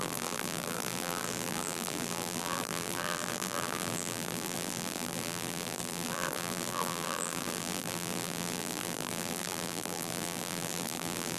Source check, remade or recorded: remade